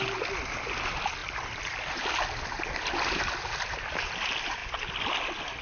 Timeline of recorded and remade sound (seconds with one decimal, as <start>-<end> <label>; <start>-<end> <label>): 0.0-5.6 recorded